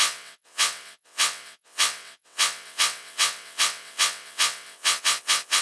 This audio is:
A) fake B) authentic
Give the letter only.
A